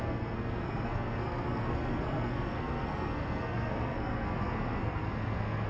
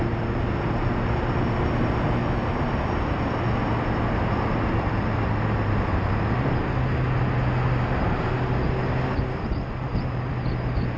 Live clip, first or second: second